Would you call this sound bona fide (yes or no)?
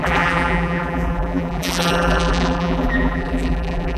no